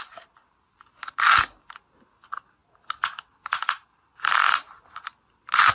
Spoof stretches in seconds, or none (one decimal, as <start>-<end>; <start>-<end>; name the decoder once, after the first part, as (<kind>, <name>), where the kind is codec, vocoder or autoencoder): none